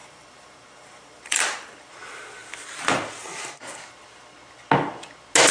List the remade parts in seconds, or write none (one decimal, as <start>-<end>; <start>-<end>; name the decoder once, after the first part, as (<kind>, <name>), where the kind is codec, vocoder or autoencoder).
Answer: 0.0-1.9 (vocoder, BigVGAN v2)